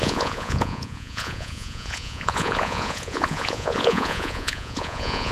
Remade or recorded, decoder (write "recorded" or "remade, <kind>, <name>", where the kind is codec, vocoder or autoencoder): remade, vocoder, Vocos